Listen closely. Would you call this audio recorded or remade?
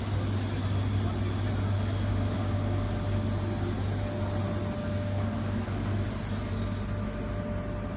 recorded